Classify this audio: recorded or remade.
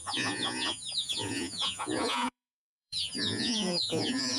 remade